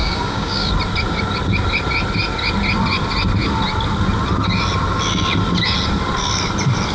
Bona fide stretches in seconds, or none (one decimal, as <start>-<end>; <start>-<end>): 0.7-6.9